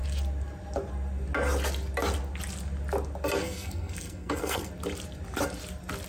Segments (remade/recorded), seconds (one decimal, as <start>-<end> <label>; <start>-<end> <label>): 0.0-3.4 recorded; 3.4-4.7 remade; 4.7-6.1 recorded